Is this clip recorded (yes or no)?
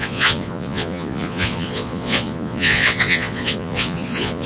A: no